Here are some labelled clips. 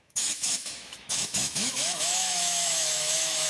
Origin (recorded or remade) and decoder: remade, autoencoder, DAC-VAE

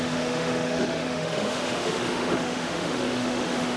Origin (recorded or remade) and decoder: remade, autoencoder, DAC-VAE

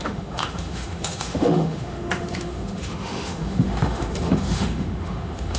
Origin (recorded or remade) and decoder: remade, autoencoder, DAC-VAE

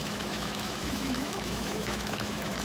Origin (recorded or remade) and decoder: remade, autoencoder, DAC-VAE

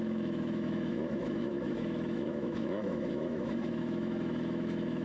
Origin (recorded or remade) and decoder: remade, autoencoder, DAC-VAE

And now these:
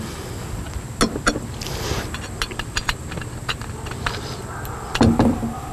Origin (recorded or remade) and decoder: recorded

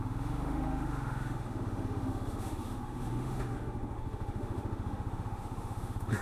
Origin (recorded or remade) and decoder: remade, autoencoder, DAC-VAE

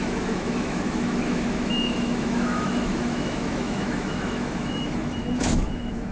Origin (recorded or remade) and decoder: remade, autoencoder, DAC-VAE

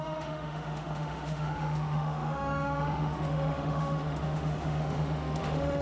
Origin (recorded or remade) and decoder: remade, autoencoder, DAC-VAE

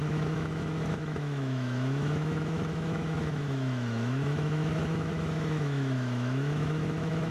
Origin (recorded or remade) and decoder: remade, autoencoder, DAC-VAE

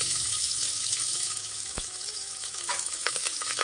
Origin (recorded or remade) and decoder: remade, autoencoder, DAC-VAE